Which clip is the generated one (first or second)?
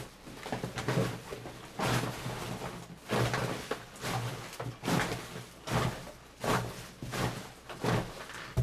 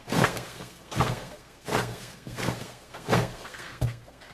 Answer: second